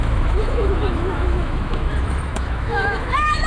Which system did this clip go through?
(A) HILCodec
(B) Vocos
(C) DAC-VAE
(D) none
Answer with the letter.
C